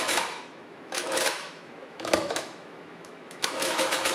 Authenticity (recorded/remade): remade